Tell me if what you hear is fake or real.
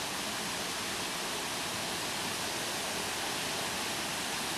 real